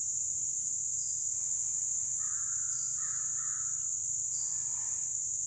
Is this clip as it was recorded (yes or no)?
yes